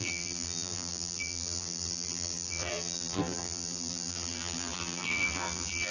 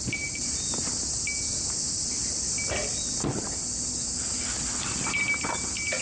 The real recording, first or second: second